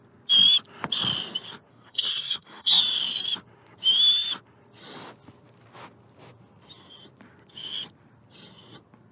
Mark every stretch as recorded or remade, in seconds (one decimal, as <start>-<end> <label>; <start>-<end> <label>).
0.0-1.7 recorded; 1.7-2.8 remade; 2.8-9.1 recorded

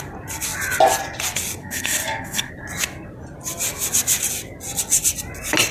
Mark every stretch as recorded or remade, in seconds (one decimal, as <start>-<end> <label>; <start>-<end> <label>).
0.0-1.6 recorded; 1.6-2.5 remade; 2.5-5.7 recorded